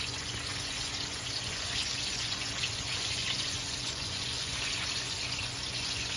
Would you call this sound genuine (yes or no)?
no